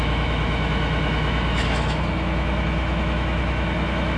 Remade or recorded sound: remade